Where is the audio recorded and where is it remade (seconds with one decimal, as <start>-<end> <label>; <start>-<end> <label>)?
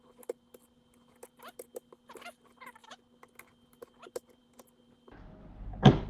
0.0-6.1 recorded